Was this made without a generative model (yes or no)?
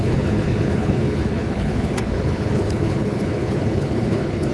no